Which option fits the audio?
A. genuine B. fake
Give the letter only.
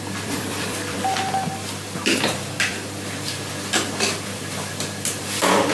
B